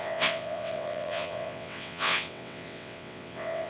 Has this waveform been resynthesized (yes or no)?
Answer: yes